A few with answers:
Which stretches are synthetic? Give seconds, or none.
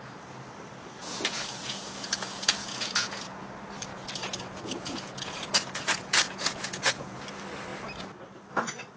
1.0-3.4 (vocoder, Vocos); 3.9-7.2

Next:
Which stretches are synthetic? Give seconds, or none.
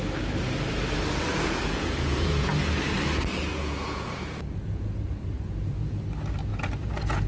1.3-2.5 (vocoder, Vocos); 3.5-6.0; 6.5-7.3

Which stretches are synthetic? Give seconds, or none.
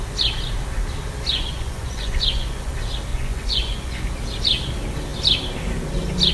1.3-2.7 (vocoder, Vocos); 3.1-4.0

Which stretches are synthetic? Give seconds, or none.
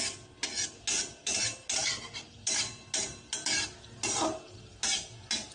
none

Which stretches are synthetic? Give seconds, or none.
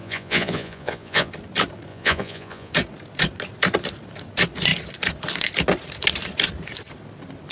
0.0-1.3 (vocoder, Vocos); 1.9-2.7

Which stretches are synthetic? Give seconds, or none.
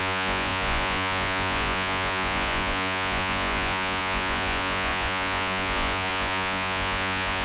0.0-7.4 (vocoder, Vocos)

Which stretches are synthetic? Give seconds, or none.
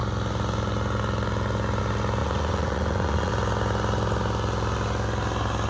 2.2-3.3 (vocoder, Vocos)